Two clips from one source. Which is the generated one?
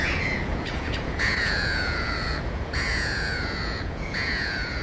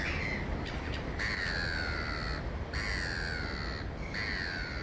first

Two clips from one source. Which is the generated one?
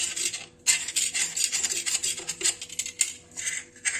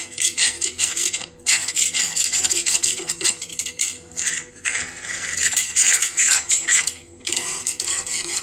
second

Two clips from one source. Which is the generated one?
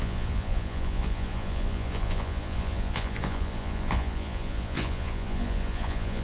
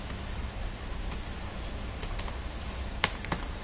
first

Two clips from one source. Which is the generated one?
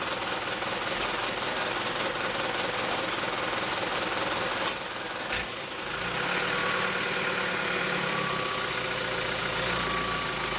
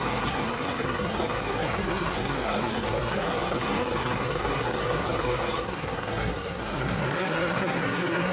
second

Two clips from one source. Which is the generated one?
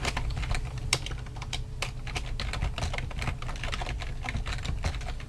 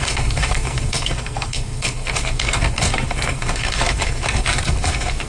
second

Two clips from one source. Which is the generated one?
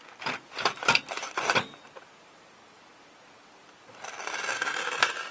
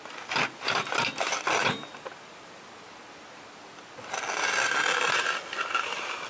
first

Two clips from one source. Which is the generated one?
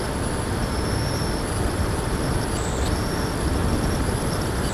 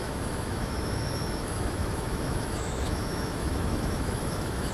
second